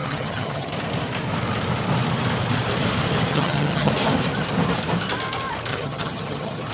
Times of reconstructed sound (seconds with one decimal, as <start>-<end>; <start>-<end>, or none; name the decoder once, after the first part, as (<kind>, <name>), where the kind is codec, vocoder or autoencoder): 0.0-0.7 (vocoder, HiFi-GAN); 3.3-3.9; 5.7-6.7